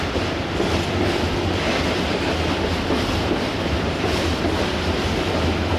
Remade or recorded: recorded